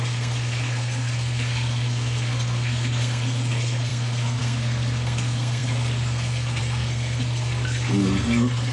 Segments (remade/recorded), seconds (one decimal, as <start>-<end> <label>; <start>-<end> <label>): 0.0-8.7 remade